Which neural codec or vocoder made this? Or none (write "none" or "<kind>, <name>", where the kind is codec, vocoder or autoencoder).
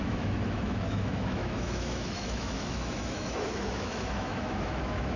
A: autoencoder, DAC-VAE